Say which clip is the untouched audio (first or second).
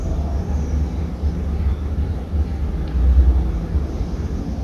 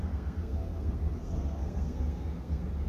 first